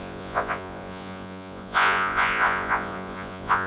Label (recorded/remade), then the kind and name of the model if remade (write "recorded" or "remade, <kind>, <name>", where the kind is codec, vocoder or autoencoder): remade, vocoder, Vocos